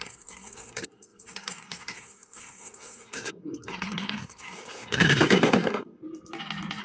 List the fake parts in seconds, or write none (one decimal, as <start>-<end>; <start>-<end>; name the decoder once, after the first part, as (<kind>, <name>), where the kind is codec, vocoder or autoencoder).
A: 0.0-6.0 (codec, SNAC)